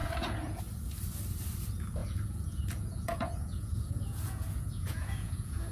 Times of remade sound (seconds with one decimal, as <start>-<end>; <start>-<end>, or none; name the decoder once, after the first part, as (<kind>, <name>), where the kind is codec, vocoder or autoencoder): 0.0-0.6 (vocoder, Vocos); 2.0-5.7